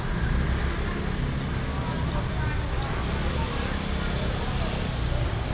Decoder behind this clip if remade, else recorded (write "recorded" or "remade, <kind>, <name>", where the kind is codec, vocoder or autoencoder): recorded